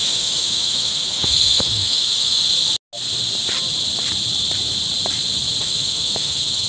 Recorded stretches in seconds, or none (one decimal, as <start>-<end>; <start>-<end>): 2.4-5.6